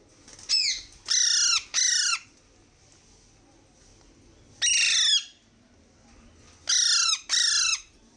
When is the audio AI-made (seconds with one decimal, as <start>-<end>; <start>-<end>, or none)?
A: none